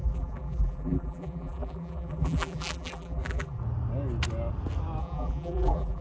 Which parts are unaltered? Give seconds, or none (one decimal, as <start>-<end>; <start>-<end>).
3.6-5.0